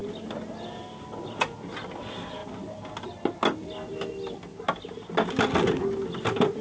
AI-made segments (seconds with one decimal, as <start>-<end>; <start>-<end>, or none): none